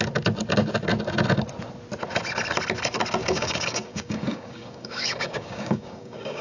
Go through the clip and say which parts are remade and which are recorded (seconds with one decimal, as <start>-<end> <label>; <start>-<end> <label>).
0.0-3.2 recorded; 3.2-6.4 remade